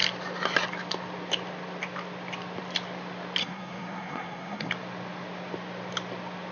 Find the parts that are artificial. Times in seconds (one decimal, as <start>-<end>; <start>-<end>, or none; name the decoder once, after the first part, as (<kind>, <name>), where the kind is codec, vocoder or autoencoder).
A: 3.4-4.7 (codec, SNAC)